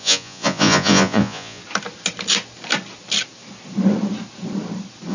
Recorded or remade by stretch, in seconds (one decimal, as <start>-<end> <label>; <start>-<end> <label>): 0.0-1.6 remade; 1.6-5.1 recorded